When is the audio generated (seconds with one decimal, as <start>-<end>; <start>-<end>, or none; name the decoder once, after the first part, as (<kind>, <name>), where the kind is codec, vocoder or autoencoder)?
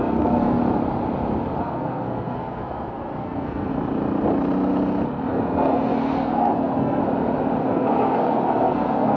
0.0-0.6 (codec, SNAC); 1.6-3.7; 5.3-7.0; 7.6-9.2